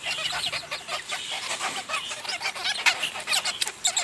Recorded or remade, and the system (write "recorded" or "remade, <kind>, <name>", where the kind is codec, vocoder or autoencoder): remade, vocoder, BigVGAN v2